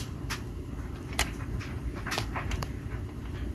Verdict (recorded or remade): remade